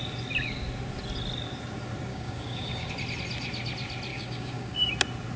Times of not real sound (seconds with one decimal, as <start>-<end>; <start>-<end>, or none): 2.1-2.9; 4.1-4.9